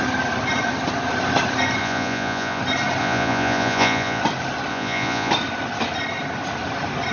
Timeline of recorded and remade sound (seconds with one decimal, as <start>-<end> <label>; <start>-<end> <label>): 0.0-1.8 recorded; 1.8-2.6 remade; 2.6-3.0 recorded; 3.0-4.2 remade; 4.2-4.7 recorded; 4.7-5.3 remade; 5.3-7.1 recorded